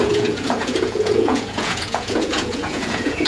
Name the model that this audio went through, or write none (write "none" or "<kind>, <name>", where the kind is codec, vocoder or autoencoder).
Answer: vocoder, Vocos